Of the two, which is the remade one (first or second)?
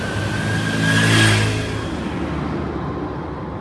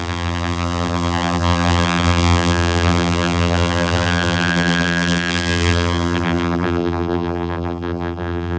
second